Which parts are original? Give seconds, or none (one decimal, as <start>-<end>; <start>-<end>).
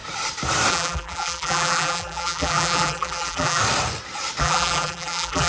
0.0-0.7; 3.6-4.4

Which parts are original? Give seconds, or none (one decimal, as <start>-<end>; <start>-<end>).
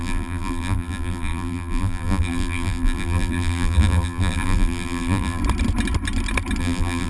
5.4-6.6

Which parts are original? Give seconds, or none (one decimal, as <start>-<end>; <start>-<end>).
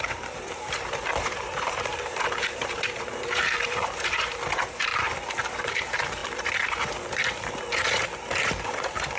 4.9-5.5; 6.2-8.3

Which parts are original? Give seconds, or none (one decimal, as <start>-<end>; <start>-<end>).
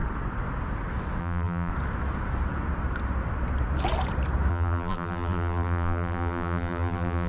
0.0-1.2; 1.7-4.5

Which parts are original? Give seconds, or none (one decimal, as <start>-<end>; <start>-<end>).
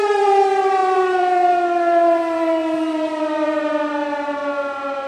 4.4-5.1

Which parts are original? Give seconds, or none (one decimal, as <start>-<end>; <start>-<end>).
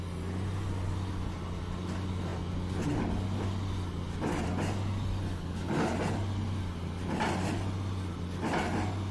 0.0-9.1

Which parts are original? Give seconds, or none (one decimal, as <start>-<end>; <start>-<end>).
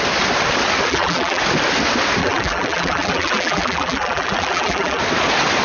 0.0-0.9; 1.4-2.2; 5.0-5.6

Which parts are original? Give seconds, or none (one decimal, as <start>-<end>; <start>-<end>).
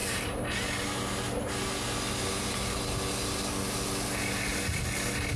0.5-5.4